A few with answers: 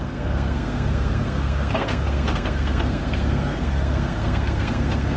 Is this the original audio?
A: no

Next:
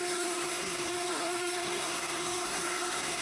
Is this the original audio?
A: no